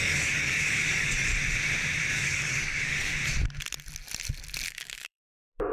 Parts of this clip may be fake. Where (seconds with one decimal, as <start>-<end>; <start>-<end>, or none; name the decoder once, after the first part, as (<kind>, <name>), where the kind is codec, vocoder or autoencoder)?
0.0-1.3 (codec, DAC); 2.1-3.1; 4.7-5.7